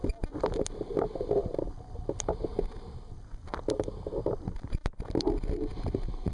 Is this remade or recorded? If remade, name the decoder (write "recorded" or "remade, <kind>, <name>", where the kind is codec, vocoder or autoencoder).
recorded